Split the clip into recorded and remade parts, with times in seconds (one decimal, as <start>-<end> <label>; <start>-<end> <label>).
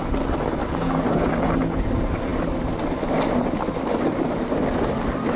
0.0-0.6 recorded; 0.6-1.3 remade; 1.3-5.4 recorded